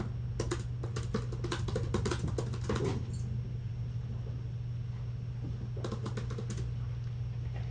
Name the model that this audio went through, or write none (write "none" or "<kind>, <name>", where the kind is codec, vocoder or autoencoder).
none